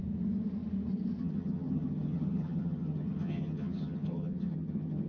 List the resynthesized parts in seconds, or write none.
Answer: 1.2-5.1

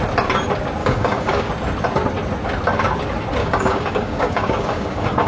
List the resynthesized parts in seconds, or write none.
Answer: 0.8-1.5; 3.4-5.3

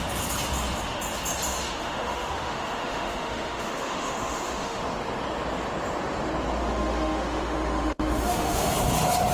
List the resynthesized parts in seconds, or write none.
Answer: 1.5-4.8; 6.6-8.7

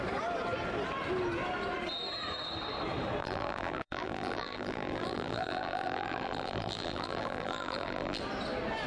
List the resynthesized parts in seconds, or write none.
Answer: 3.2-8.2

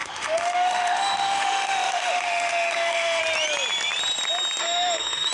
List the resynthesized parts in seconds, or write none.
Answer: 0.0-3.2; 4.6-5.3